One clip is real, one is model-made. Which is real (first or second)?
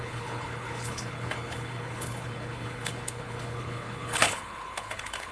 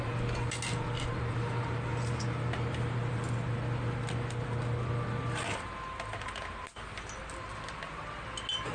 second